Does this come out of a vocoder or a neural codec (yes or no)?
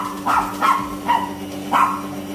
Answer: no